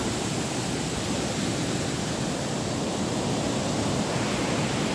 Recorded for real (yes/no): yes